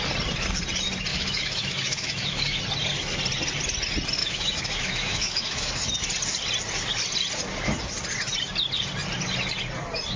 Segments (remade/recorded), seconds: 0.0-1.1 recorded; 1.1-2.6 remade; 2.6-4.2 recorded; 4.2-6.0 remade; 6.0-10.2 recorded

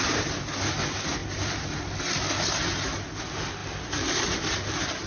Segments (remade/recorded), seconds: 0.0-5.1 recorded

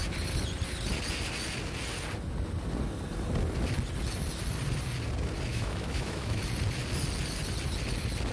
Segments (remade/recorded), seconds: 0.0-5.5 recorded; 5.5-6.4 remade; 6.4-8.3 recorded